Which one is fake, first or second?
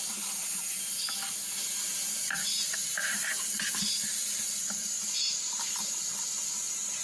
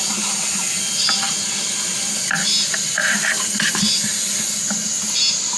first